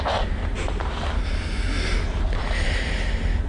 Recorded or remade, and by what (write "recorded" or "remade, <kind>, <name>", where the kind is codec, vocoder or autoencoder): recorded